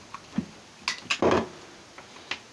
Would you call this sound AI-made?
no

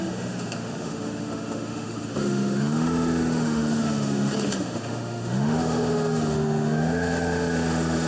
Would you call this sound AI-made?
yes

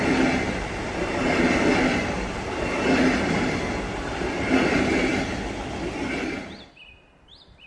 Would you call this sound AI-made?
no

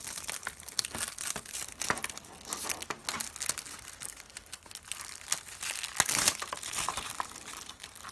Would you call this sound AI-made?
no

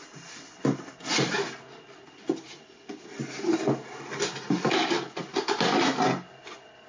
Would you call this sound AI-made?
no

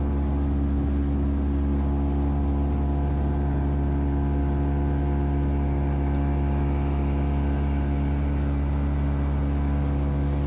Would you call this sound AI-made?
no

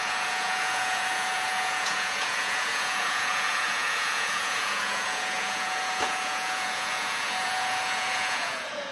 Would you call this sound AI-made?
yes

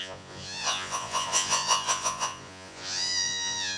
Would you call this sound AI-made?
yes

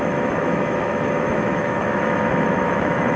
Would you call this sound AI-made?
yes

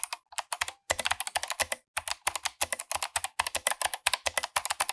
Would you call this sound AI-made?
no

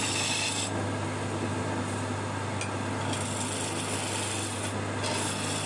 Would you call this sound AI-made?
no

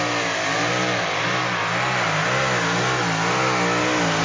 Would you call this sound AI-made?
no